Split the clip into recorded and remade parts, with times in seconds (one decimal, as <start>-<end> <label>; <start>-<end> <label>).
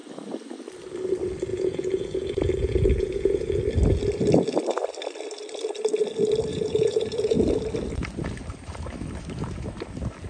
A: 0.0-1.5 recorded; 1.5-3.6 remade; 3.6-6.5 recorded; 6.5-7.4 remade; 7.4-10.3 recorded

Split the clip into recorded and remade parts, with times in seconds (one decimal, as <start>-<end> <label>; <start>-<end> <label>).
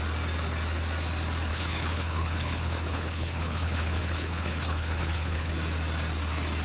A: 0.0-1.5 recorded; 1.5-5.5 remade; 5.5-6.6 recorded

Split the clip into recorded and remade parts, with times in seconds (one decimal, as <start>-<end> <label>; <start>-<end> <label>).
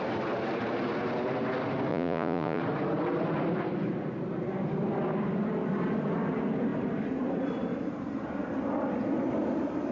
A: 0.0-1.9 recorded; 1.9-2.6 remade; 2.6-9.9 recorded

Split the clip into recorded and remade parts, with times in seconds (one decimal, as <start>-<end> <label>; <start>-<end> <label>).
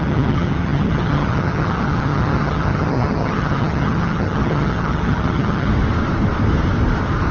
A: 0.0-5.7 remade; 5.7-7.3 recorded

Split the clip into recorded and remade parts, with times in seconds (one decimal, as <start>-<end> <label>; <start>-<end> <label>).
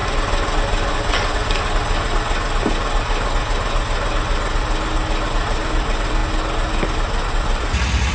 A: 0.0-0.9 recorded; 0.9-1.4 remade; 1.4-5.6 recorded; 5.6-6.2 remade; 6.2-7.3 recorded; 7.3-8.1 remade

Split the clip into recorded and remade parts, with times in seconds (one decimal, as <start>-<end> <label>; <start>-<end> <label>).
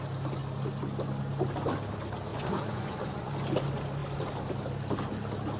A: 0.0-2.3 recorded; 2.3-3.3 remade; 3.3-5.6 recorded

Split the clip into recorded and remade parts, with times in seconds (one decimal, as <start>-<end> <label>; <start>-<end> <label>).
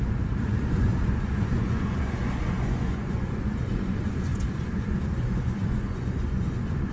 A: 0.0-6.9 remade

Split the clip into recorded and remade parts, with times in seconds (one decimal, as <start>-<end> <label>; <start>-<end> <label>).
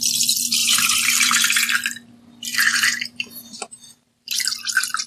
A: 0.0-0.6 recorded; 0.6-1.7 remade; 1.7-2.5 recorded; 2.5-4.4 remade; 4.4-5.1 recorded